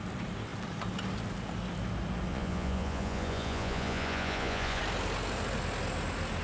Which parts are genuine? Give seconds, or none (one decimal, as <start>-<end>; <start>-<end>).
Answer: 0.0-2.3; 4.8-6.4